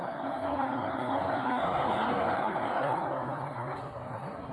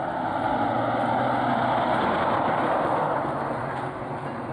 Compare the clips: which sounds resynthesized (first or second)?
first